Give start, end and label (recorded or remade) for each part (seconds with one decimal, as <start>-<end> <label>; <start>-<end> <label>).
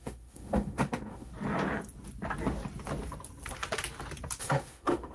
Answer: 0.0-1.3 remade; 1.3-4.4 recorded; 4.4-5.1 remade